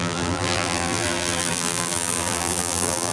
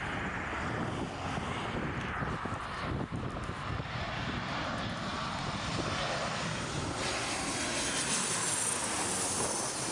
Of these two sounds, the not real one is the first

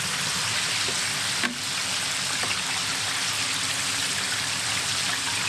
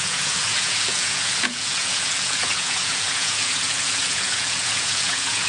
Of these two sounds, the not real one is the second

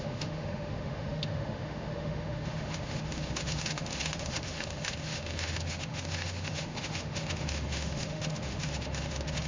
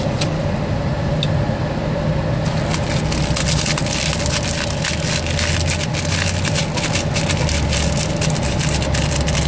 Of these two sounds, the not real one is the first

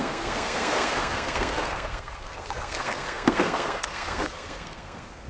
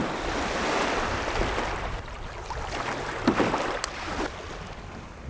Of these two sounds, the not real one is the first